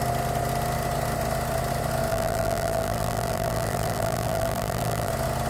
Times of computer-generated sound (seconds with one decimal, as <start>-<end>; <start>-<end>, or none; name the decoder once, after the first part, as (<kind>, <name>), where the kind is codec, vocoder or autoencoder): 2.1-5.1 (vocoder, BigVGAN v2)